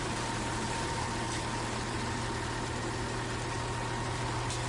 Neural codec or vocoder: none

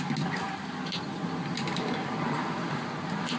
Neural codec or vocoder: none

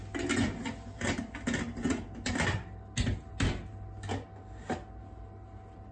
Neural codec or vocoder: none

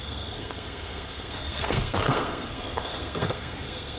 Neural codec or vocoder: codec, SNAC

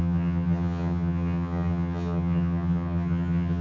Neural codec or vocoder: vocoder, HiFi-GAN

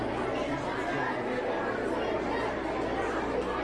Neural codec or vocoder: none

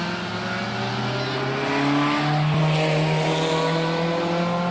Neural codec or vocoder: none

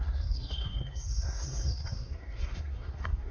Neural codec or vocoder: codec, SNAC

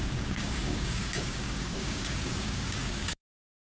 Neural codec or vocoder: codec, DAC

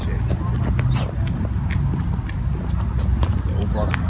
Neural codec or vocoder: none